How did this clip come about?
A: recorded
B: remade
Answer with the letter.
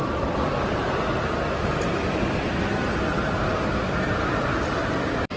A